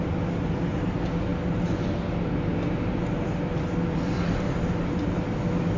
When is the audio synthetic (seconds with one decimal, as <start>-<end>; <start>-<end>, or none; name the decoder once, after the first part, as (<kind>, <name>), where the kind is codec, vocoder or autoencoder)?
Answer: none